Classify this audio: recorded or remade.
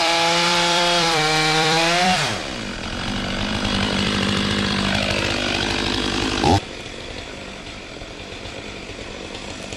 remade